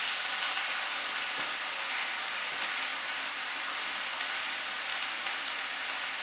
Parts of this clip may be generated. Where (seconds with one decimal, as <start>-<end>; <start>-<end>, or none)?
none